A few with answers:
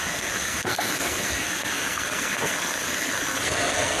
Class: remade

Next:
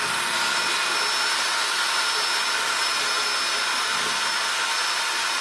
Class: recorded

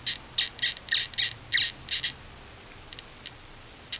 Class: recorded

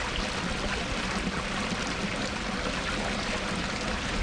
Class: recorded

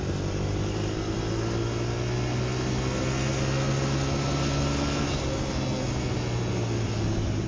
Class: recorded